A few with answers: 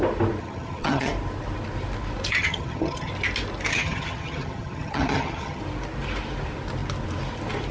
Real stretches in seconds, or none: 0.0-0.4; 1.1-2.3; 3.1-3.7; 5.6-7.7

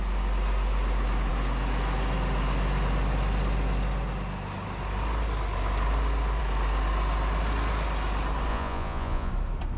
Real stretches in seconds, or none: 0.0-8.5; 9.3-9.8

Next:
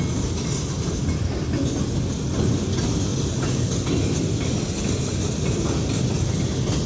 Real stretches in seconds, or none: 0.0-6.9

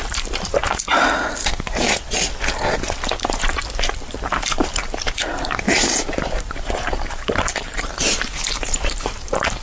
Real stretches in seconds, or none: 0.6-3.1